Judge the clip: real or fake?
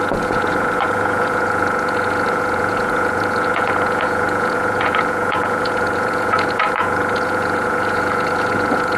fake